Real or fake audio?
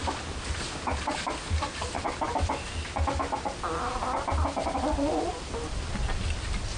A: real